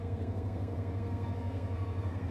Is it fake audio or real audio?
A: fake